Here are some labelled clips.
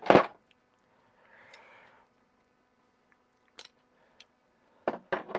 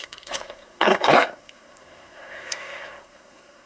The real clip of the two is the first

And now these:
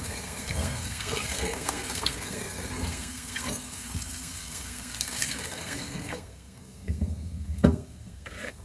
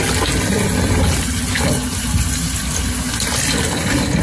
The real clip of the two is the second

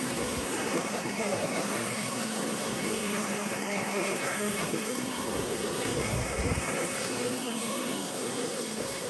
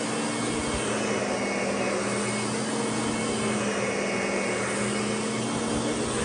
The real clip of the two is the second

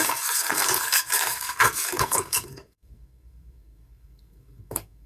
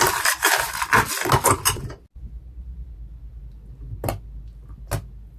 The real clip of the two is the second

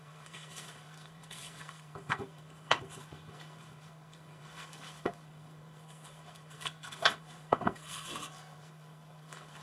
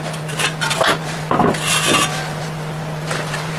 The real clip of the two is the second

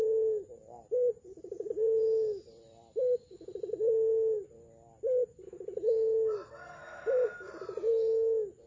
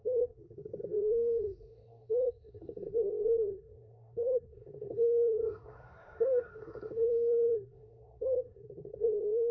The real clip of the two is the first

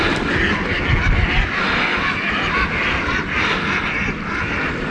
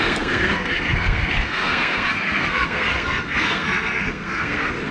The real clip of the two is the first